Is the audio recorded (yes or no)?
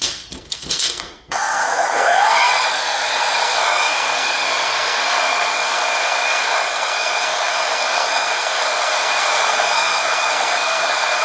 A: no